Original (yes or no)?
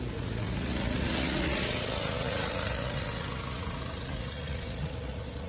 no